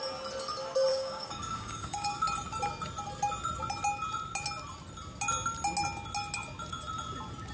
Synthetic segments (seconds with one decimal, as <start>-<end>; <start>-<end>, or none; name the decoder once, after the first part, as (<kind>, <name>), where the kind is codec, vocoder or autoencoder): 0.9-2.2 (codec, DAC)